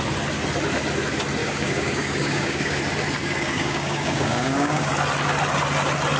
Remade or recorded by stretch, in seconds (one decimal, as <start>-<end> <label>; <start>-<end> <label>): 0.0-1.4 recorded; 1.4-2.8 remade; 2.8-3.2 recorded; 3.2-4.9 remade; 4.9-6.2 recorded